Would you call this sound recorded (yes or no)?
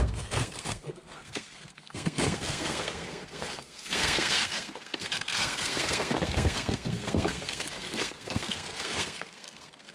no